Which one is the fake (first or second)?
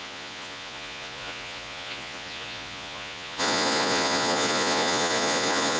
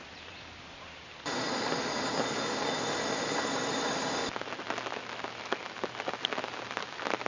first